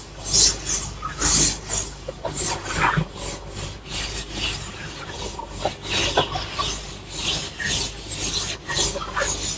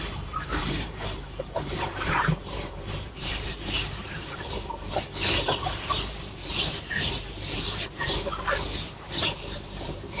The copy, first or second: second